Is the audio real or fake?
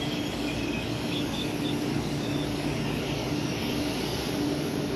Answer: fake